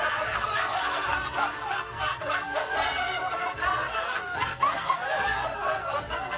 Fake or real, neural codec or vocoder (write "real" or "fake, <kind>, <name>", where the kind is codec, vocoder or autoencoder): fake, codec, SNAC